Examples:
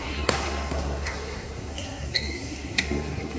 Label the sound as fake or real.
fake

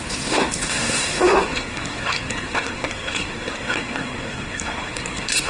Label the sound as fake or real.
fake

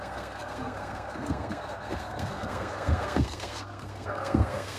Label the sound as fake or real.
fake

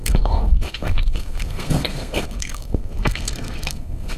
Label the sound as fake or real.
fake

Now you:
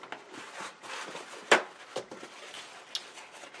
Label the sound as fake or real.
real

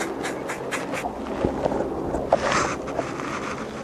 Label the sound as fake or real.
real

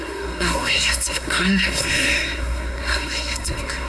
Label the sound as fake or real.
fake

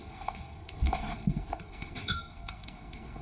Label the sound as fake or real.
fake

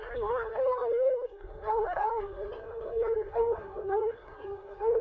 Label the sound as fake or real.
fake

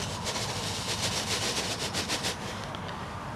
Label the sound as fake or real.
real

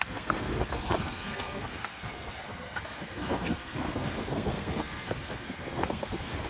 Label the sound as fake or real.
fake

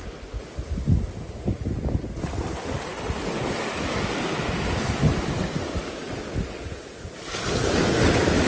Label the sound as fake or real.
real